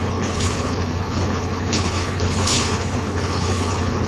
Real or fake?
fake